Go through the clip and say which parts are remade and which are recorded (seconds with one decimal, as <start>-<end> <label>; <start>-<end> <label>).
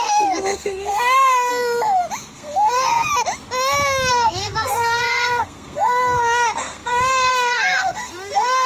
0.0-1.5 remade; 1.5-2.3 recorded; 2.3-3.1 remade; 3.1-4.1 recorded; 4.1-8.7 remade